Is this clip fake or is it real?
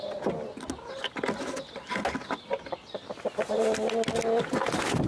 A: real